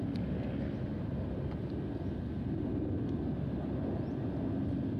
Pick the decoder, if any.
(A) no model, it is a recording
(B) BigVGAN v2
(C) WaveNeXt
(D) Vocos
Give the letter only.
A